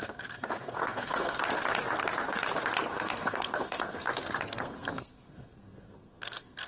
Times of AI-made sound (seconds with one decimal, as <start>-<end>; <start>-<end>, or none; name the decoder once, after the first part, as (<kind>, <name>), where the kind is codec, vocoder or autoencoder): 0.0-1.4 (codec, SNAC); 2.9-4.1; 4.6-6.7